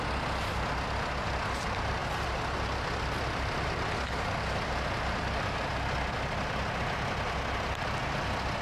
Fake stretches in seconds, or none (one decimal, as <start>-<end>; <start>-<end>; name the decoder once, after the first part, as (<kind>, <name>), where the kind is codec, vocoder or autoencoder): none